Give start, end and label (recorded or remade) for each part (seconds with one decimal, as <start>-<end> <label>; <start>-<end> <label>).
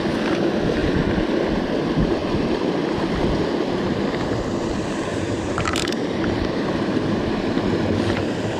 0.0-5.1 recorded; 5.1-7.2 remade; 7.2-8.6 recorded